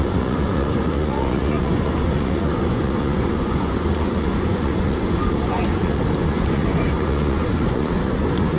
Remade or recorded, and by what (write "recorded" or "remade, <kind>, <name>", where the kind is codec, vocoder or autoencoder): remade, vocoder, Vocos